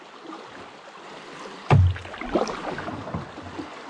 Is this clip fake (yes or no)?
no